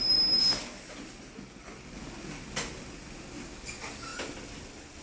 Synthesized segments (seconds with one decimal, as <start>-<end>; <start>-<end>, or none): none